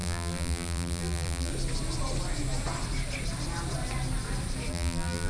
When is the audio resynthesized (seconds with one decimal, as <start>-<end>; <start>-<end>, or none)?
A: 0.0-1.5; 4.7-5.3